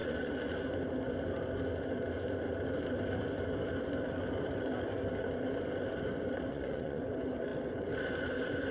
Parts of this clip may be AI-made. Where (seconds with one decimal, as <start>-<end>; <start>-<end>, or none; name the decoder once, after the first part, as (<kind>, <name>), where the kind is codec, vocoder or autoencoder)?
0.0-0.6 (vocoder, Vocos); 6.5-7.0